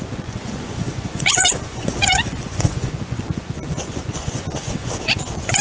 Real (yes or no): no